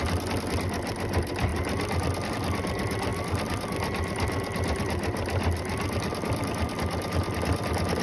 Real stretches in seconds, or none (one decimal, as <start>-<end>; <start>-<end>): 0.0-8.0